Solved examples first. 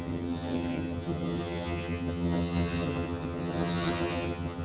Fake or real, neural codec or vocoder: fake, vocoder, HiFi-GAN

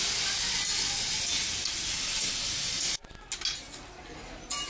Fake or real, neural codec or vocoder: real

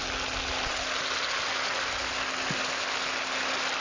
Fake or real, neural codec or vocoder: real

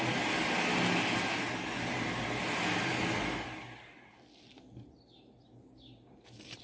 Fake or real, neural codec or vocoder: real